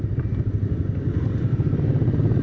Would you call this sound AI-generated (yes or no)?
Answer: no